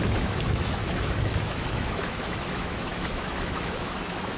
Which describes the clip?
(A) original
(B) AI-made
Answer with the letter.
B